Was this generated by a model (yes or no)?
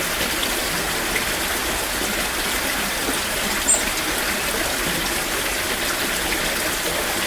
no